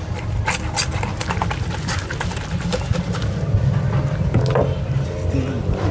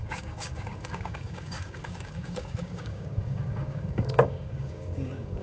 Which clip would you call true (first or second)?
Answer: first